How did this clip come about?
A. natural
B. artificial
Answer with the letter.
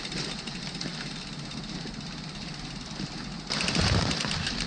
A